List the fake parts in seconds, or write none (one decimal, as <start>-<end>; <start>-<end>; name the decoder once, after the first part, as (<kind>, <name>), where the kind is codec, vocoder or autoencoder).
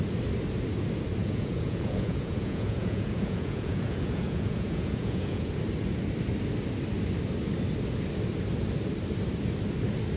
1.2-5.6 (vocoder, Vocos)